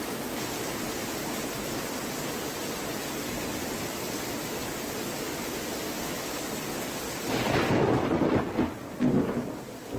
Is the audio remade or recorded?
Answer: recorded